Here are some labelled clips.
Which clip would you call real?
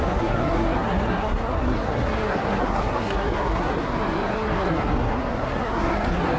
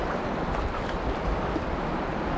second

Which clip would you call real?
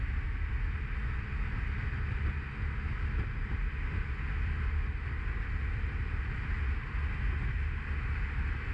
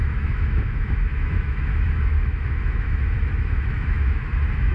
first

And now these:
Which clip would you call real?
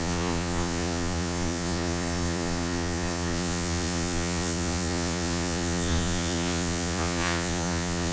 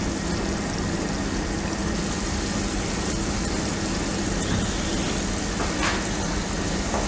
second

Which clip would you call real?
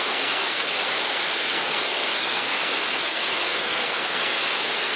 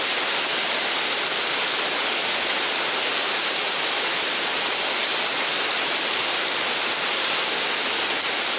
second